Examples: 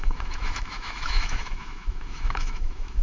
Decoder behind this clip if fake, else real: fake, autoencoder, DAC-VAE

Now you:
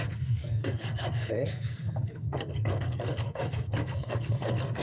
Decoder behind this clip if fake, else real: fake, codec, SNAC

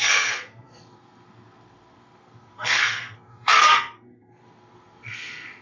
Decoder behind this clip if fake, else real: fake, codec, SNAC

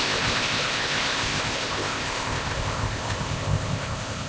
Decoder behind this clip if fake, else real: fake, codec, ZipCodec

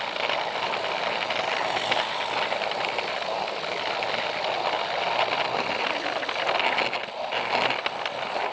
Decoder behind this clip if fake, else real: real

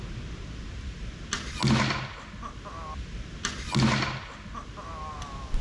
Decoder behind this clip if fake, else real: real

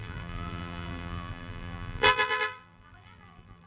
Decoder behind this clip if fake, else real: fake, vocoder, BigVGAN v2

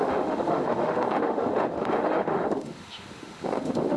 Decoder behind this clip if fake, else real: fake, autoencoder, DAC-VAE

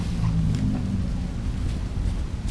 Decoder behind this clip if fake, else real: real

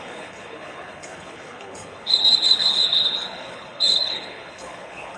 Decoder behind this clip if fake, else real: fake, codec, HILCodec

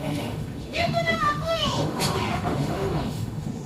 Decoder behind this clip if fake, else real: fake, autoencoder, DAC-VAE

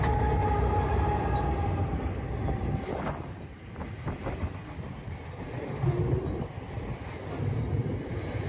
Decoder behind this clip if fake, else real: real